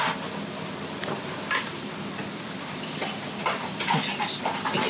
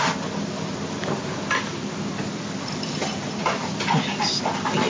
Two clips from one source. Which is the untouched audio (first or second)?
second